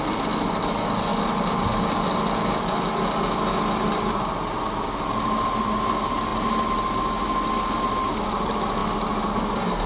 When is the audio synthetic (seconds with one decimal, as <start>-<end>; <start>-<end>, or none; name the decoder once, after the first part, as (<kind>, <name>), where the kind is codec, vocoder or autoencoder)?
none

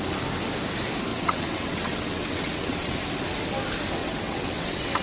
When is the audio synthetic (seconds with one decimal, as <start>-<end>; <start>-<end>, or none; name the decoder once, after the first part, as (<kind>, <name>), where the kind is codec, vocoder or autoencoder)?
1.1-3.0 (vocoder, WaveNeXt); 4.0-5.0

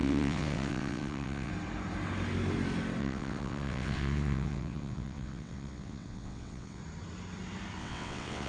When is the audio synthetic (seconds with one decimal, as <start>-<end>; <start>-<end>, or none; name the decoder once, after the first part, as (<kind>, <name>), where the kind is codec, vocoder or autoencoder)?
0.0-1.5 (vocoder, WaveNeXt); 3.0-6.8; 7.8-8.5

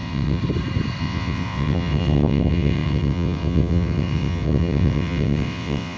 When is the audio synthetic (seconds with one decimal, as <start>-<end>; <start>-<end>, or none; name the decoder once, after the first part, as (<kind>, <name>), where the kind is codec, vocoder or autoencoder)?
0.0-0.4 (vocoder, WaveNeXt); 1.0-6.0

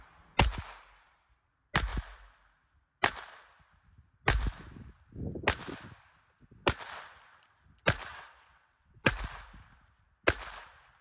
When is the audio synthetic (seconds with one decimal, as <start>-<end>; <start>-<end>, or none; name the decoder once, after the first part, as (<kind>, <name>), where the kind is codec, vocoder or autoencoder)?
8.1-9.1 (vocoder, WaveNeXt)